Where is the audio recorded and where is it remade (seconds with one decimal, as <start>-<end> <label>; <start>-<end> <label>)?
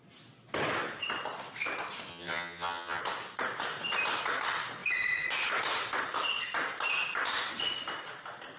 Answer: 0.0-2.1 recorded; 2.1-3.0 remade; 3.0-8.6 recorded